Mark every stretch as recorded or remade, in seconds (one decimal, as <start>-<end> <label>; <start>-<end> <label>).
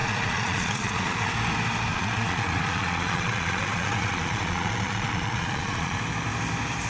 0.0-1.3 remade; 1.3-1.9 recorded; 1.9-6.0 remade; 6.0-6.9 recorded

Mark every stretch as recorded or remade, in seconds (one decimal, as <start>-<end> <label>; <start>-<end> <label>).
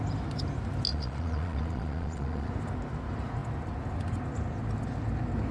0.0-0.9 recorded; 0.9-2.5 remade; 2.5-5.5 recorded